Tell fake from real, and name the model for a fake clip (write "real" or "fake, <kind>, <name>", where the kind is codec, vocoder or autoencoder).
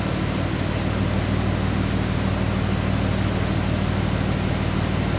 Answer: real